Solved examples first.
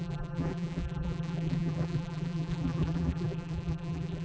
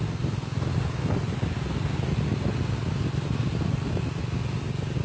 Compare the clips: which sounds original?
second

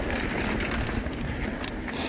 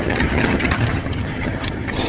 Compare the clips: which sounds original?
first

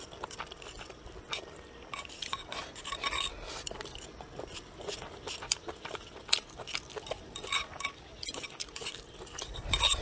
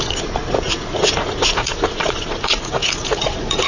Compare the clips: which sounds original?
first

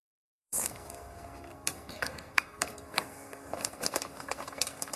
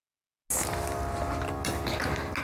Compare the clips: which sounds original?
second